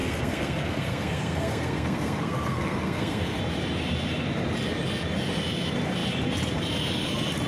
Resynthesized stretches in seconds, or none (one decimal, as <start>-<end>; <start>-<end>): 0.0-3.4